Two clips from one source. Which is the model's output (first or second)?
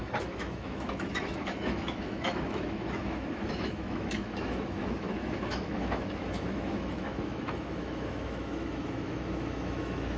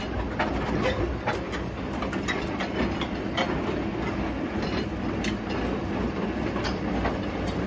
first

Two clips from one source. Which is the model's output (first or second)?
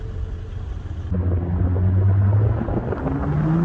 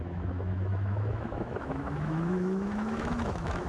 second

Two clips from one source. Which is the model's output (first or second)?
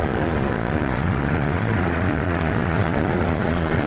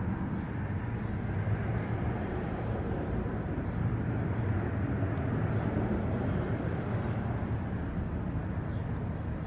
first